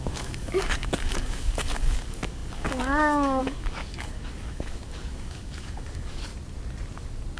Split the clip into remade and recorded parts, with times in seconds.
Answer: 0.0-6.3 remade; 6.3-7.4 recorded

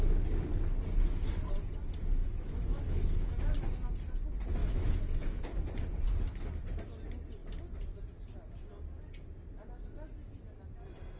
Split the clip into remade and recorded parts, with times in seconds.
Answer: 0.0-2.2 recorded; 2.2-3.3 remade; 3.3-4.6 recorded; 4.6-5.4 remade; 5.4-11.2 recorded

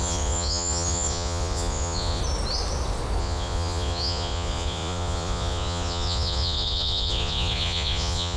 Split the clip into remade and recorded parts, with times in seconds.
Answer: 0.0-2.2 remade; 2.2-3.2 recorded; 3.2-8.4 remade

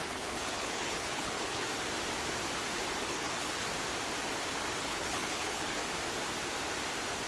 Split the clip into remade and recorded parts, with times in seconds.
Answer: 0.0-1.7 remade; 1.7-3.0 recorded; 3.0-3.7 remade; 3.7-4.8 recorded; 4.8-5.8 remade; 5.8-7.3 recorded

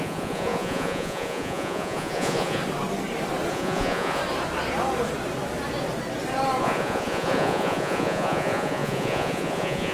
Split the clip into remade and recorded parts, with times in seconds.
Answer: 0.0-2.6 remade; 2.6-3.5 recorded; 3.5-4.2 remade; 4.2-6.6 recorded; 6.6-9.9 remade

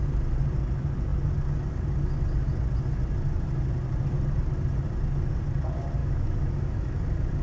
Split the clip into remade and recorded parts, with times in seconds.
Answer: 0.0-6.0 recorded; 6.0-7.0 remade; 7.0-7.4 recorded

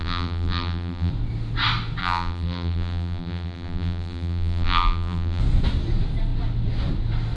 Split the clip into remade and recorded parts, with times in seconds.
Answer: 0.0-1.1 remade; 1.1-2.0 recorded; 2.0-5.4 remade; 5.4-7.4 recorded

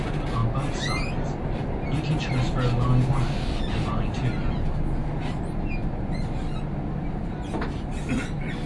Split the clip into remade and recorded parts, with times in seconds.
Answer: 0.0-8.7 recorded